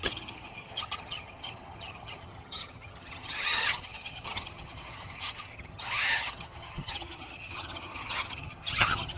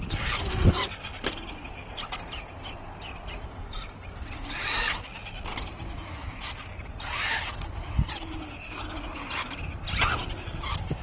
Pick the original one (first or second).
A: second